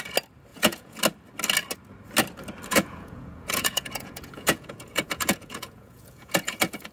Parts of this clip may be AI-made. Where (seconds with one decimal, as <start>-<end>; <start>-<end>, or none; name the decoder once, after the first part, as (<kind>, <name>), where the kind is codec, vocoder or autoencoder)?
0.5-1.0 (vocoder, Vocos); 2.7-6.9